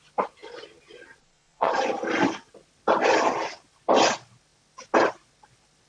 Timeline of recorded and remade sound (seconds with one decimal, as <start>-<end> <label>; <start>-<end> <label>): 0.0-1.2 recorded; 1.2-1.8 remade; 1.8-5.9 recorded